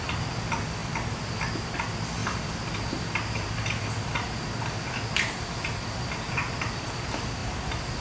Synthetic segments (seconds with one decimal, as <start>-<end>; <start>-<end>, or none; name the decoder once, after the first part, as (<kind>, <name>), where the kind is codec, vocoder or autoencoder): 0.8-1.5 (vocoder, BigVGAN v2); 2.2-6.9; 7.4-8.0

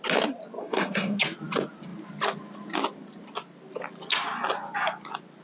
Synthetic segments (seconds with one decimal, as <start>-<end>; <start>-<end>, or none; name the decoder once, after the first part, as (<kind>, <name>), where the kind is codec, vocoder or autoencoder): 0.6-1.2 (codec, SNAC)

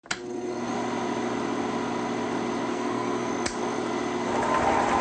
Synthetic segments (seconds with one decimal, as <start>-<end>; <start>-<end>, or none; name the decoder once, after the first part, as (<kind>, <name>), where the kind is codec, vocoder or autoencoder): 2.7-3.3 (codec, SNAC)

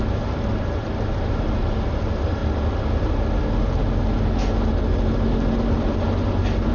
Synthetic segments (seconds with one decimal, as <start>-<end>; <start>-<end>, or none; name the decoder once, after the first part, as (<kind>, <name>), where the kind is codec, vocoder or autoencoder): none

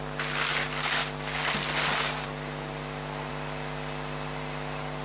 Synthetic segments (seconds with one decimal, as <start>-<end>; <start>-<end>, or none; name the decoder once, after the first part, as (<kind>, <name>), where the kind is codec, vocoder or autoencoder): none

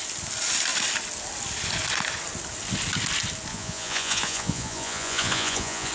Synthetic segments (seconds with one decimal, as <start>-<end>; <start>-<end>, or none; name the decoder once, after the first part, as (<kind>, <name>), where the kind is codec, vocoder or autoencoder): 3.5-5.9 (vocoder, Vocos)

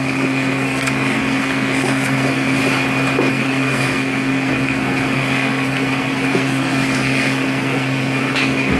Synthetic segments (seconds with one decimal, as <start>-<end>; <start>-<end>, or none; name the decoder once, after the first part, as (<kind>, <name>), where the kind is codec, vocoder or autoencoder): 0.0-2.6 (codec, SNAC); 3.3-8.8